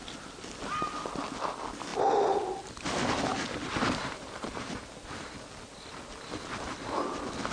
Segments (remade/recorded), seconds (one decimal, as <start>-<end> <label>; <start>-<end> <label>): 0.0-7.5 recorded